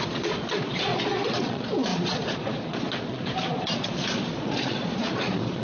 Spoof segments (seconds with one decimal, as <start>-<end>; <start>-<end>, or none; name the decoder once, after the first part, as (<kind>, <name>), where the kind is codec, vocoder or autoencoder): 0.0-5.6 (vocoder, Vocos)